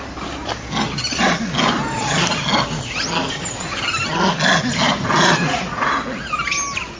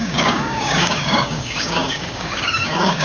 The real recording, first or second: first